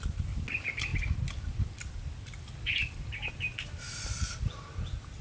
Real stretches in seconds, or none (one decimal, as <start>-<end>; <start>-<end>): 0.0-5.2